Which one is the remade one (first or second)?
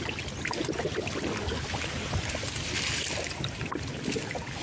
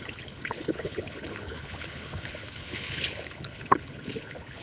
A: second